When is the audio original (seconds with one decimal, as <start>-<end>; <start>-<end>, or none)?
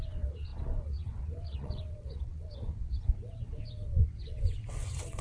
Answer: none